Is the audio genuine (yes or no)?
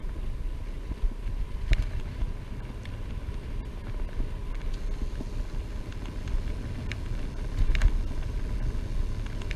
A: yes